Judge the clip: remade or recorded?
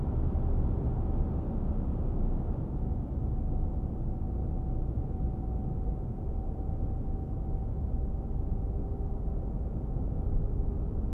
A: recorded